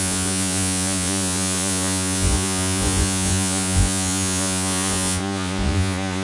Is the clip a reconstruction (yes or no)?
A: yes